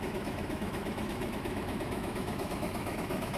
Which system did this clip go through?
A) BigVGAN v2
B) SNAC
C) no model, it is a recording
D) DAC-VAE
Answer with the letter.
D